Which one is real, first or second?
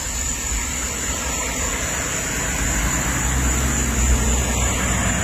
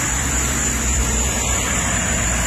first